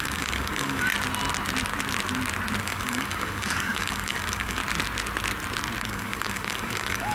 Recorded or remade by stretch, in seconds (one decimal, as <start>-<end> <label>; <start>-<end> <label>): 0.0-0.9 remade; 0.9-2.6 recorded; 2.6-4.6 remade; 4.6-5.8 recorded; 5.8-7.1 remade